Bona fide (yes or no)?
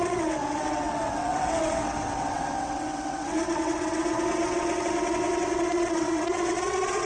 no